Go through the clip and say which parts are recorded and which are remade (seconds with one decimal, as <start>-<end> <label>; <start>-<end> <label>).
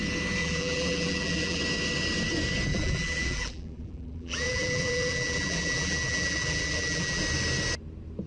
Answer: 0.0-0.4 recorded; 0.4-1.6 remade; 1.6-2.7 recorded; 2.7-7.2 remade; 7.2-8.3 recorded